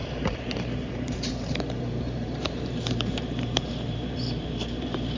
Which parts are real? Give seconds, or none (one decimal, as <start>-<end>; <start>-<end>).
none